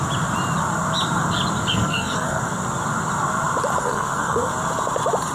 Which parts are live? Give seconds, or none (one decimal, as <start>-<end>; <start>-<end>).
0.0-1.7; 2.4-3.8; 4.5-5.3

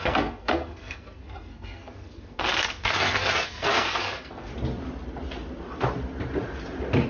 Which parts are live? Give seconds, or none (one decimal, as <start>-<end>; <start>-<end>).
4.5-7.1

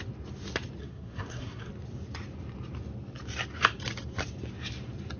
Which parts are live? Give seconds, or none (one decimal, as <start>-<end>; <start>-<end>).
0.0-0.8; 1.7-5.2

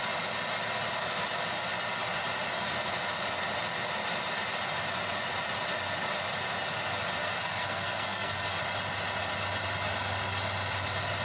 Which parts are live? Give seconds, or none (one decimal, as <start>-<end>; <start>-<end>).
0.0-7.2; 8.6-11.2

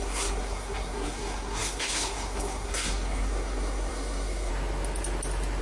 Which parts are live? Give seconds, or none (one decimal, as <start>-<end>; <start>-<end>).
4.5-5.6

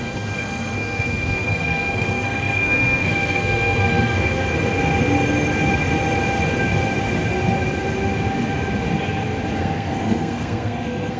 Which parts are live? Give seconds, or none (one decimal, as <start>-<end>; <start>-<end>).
4.4-9.6

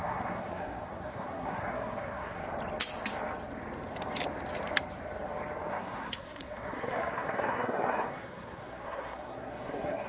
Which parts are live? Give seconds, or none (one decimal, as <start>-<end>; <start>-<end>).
2.4-5.7